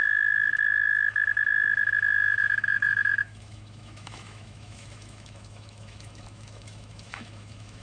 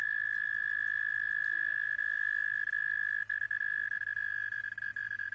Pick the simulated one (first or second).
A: first